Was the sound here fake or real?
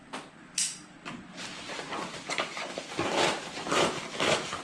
real